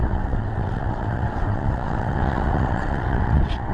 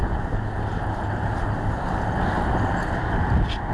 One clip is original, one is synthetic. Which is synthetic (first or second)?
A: first